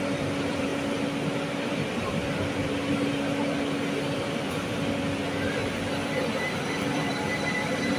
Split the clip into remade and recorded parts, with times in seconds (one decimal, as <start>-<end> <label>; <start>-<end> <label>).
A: 0.0-5.6 remade; 5.6-6.1 recorded; 6.1-8.0 remade